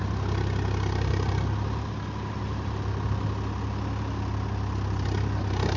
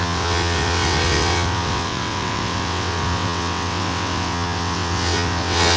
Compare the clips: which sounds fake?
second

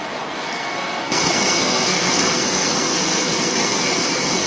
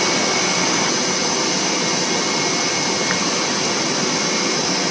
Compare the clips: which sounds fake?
first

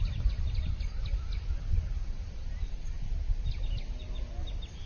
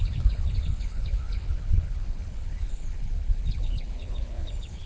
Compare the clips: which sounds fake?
second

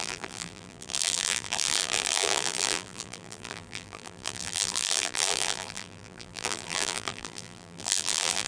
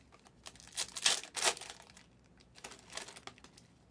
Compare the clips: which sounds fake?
first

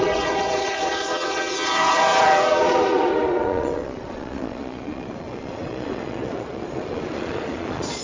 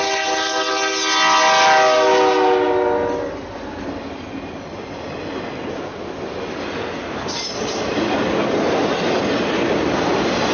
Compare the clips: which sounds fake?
first